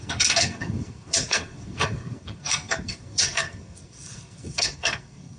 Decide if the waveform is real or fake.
fake